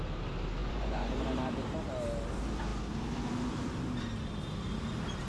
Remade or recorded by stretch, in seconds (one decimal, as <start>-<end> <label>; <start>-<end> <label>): 0.0-0.6 recorded; 0.6-1.2 remade; 1.2-5.3 recorded